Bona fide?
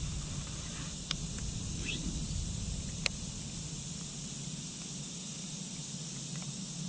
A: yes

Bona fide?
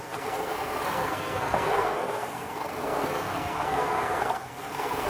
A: no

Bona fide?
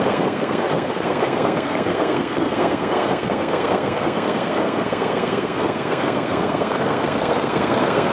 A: no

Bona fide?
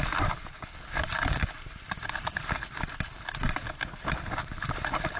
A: yes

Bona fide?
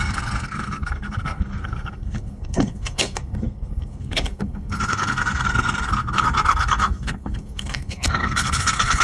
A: no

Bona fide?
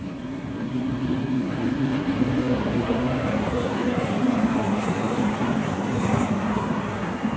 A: no